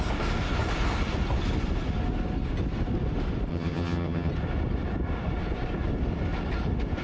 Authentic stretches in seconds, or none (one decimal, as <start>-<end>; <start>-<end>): 0.0-3.5; 4.3-7.0